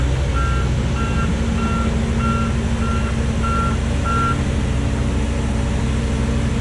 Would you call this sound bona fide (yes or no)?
yes